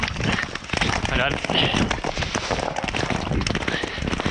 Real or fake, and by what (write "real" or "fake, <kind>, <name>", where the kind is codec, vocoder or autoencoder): real